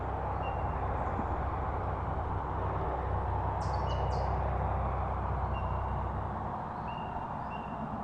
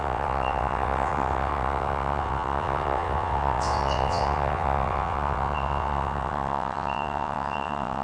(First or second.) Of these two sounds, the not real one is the second